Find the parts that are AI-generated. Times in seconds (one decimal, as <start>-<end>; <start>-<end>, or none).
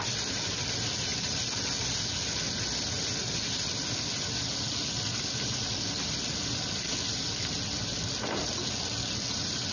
none